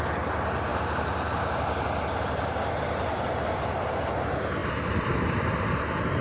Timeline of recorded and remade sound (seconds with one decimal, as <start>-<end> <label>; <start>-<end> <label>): 0.0-0.7 recorded; 0.7-4.1 remade; 4.1-4.6 recorded; 4.6-6.2 remade